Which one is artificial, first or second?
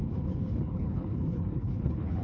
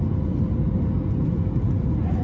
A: first